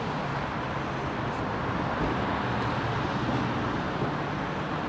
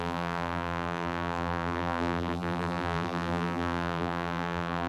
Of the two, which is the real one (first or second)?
first